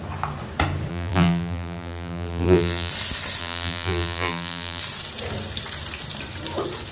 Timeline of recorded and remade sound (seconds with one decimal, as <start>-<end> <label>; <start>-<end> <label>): 0.0-0.9 recorded; 0.9-2.9 remade; 2.9-3.4 recorded; 3.4-4.8 remade; 4.8-6.9 recorded